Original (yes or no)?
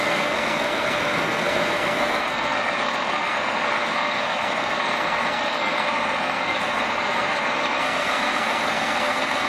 no